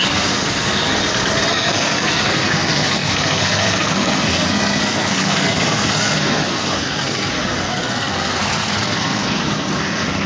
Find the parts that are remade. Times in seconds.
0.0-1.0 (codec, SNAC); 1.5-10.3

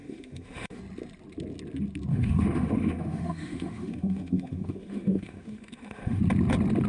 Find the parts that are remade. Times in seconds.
0.0-0.8 (autoencoder, DAC-VAE); 2.1-6.2

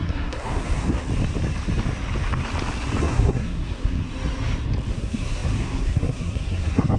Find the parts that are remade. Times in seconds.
0.0-1.0 (codec, SNAC); 3.0-4.0; 4.9-7.0

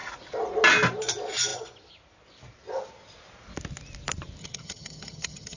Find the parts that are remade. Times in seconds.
4.4-5.6 (vocoder, HiFi-GAN)